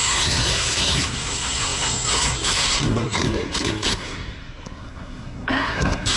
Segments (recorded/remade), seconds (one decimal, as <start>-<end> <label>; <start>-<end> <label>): 0.0-6.2 remade